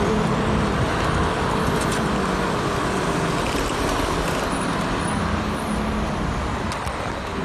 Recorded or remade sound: recorded